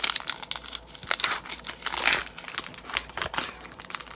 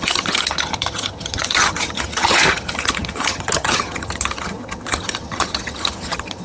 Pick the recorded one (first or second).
first